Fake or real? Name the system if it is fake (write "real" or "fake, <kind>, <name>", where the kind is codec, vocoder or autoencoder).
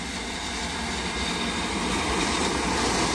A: real